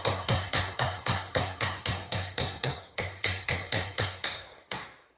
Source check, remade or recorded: remade